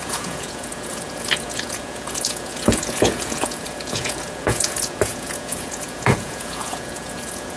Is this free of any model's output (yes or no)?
no